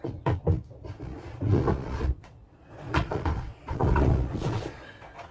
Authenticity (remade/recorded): remade